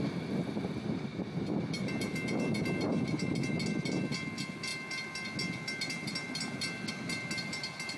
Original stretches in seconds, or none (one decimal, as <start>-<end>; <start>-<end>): 0.0-8.0